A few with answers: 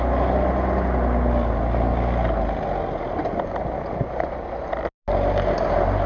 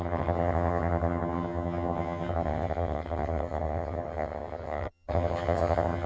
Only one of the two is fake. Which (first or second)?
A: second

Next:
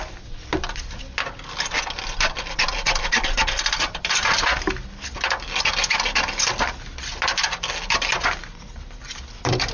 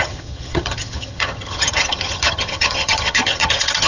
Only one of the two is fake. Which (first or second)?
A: second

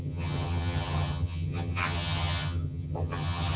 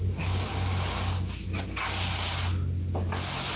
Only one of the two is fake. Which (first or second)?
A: first